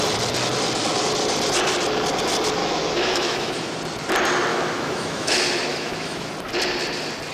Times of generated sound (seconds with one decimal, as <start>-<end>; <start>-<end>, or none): 2.6-3.7; 4.5-5.3; 5.7-6.3